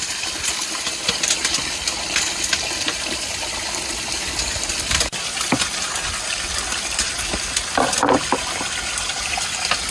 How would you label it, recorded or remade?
recorded